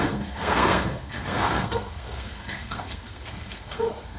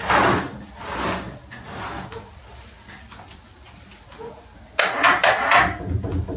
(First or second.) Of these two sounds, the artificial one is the first